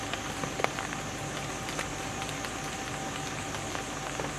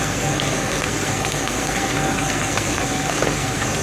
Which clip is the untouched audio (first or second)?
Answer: first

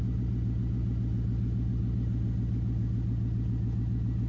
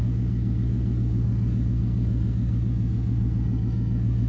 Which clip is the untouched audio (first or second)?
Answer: first